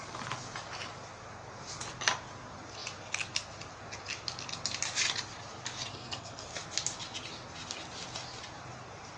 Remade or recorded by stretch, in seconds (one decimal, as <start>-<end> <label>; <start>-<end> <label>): 0.0-5.9 recorded; 5.9-6.5 remade; 6.5-9.2 recorded